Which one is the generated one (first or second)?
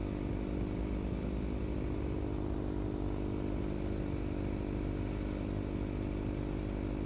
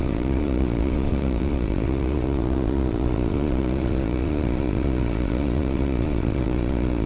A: second